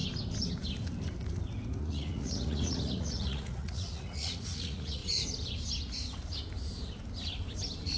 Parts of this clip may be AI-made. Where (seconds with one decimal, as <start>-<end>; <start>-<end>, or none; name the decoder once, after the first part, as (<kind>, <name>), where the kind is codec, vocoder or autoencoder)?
1.8-5.0 (vocoder, Vocos)